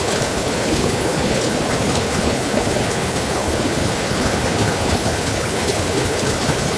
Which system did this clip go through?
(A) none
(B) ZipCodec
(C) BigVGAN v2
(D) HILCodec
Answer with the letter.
D